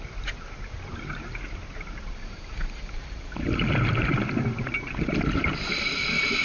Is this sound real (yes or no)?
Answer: no